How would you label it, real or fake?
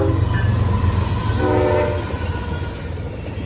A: real